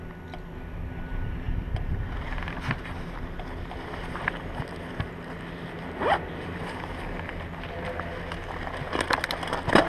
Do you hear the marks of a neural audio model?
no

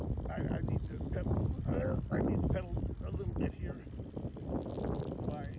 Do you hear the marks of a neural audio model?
no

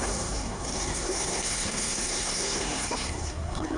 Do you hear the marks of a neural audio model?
yes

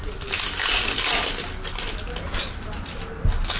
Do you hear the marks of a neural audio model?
no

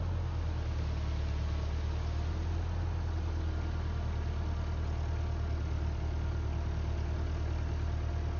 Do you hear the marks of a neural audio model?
no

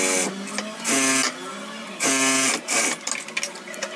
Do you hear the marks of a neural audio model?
no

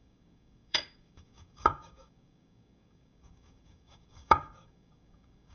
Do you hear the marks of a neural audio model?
yes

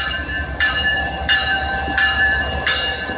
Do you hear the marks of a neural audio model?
yes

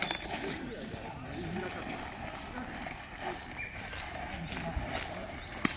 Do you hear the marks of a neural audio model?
no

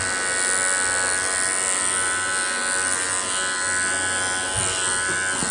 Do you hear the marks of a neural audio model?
no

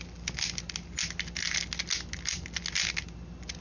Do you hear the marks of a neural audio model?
no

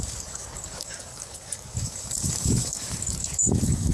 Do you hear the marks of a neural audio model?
yes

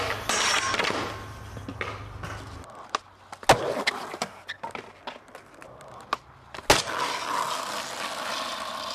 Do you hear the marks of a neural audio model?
no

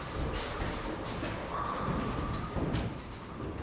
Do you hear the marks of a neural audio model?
no